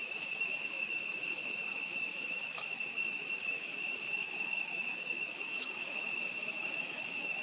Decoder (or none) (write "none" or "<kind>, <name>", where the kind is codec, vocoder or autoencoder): autoencoder, DAC-VAE